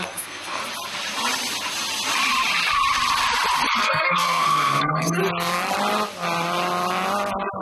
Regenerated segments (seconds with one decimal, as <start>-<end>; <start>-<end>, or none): 0.0-0.6; 3.8-5.2